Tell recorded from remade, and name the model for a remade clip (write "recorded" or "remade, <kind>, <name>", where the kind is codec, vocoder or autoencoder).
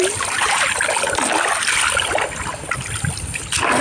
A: recorded